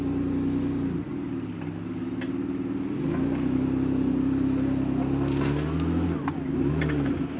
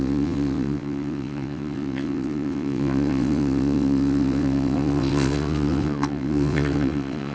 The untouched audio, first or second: first